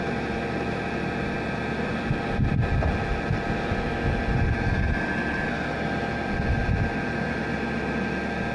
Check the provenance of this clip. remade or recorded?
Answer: recorded